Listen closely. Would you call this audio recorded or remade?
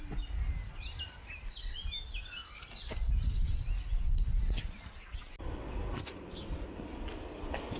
recorded